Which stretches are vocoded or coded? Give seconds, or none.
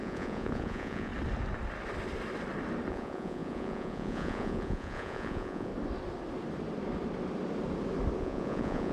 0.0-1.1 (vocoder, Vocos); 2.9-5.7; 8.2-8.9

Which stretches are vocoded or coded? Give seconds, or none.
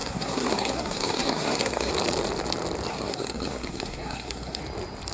0.0-1.9 (codec, SNAC); 2.9-4.6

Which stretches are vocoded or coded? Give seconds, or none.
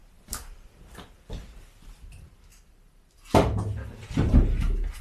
0.0-1.3 (vocoder, BigVGAN v2); 2.5-4.3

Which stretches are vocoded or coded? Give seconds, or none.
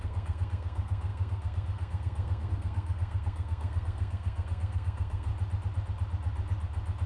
0.0-5.3 (codec, SNAC)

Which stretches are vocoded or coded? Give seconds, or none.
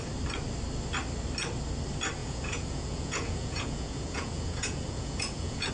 2.2-5.7 (vocoder, Vocos)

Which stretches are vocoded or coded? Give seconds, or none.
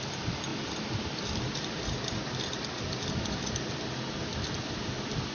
none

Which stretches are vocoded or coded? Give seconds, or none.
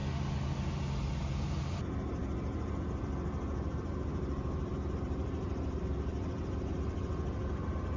1.2-8.0 (vocoder, BigVGAN v2)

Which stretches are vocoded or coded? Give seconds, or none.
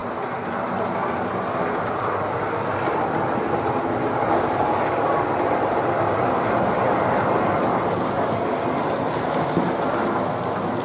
none